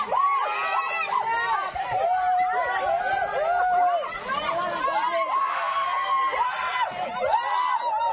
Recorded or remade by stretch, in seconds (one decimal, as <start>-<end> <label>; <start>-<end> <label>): 0.0-5.4 recorded; 5.4-6.2 remade; 6.2-8.1 recorded